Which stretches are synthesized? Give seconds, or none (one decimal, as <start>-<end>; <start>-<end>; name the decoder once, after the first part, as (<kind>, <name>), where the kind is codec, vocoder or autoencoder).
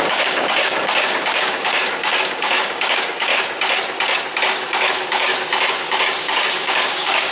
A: 0.0-3.3 (codec, DAC); 4.4-5.3; 6.2-7.3